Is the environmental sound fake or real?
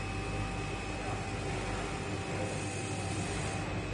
real